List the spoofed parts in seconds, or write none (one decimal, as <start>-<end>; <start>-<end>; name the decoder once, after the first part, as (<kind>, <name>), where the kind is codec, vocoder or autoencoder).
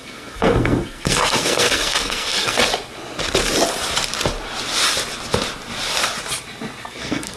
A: 0.0-2.6 (codec, SNAC); 6.9-7.4